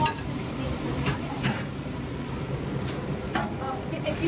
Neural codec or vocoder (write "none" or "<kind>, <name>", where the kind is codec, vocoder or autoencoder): vocoder, BigVGAN v2